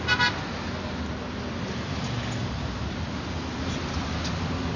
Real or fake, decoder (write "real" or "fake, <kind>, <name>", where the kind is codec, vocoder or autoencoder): real